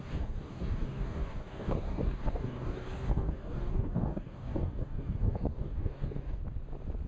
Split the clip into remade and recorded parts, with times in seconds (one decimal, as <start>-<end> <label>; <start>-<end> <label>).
0.0-6.4 remade; 6.4-7.1 recorded